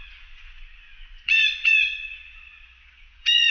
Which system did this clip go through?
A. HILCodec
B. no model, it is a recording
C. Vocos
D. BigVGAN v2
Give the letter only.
C